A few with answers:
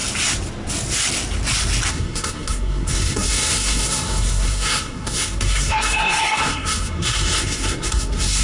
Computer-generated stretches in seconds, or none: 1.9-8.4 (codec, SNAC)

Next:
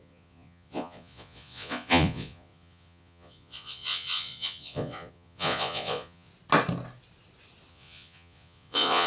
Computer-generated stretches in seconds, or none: 0.0-6.3 (vocoder, Vocos); 7.7-9.1

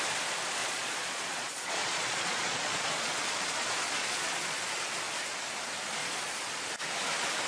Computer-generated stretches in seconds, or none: 0.6-4.7 (vocoder, Vocos); 6.0-6.5

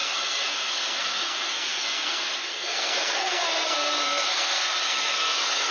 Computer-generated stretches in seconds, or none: 0.0-5.7 (codec, SNAC)